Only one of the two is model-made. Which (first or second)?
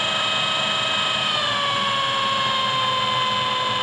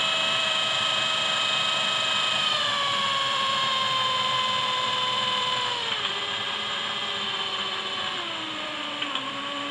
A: second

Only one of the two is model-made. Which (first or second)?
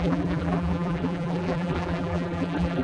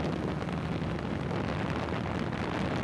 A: first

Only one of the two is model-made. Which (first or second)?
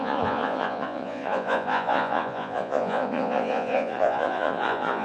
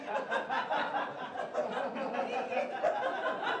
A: first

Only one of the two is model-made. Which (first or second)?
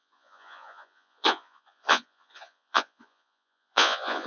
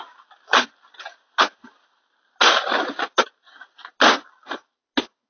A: first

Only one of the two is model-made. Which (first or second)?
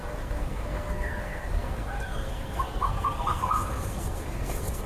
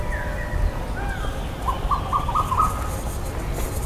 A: first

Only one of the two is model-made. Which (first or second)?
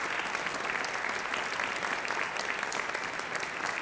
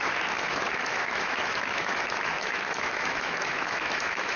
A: second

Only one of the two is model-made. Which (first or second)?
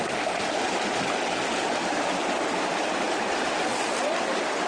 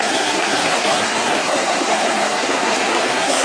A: second